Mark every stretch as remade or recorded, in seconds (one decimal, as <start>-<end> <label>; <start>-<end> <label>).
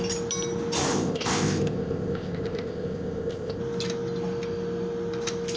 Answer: 0.0-0.9 recorded; 0.9-3.6 remade; 3.6-5.6 recorded